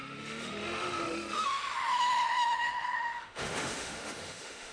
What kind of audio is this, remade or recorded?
remade